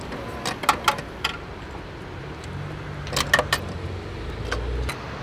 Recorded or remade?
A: recorded